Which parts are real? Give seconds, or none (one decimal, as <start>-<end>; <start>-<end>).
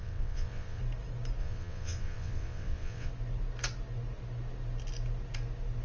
0.8-1.4; 3.1-5.8